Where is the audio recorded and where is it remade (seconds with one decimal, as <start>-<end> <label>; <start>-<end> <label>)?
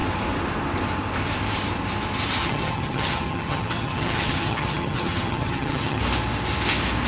0.0-2.4 recorded; 2.4-6.0 remade; 6.0-7.1 recorded